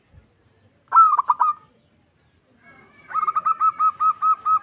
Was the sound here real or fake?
real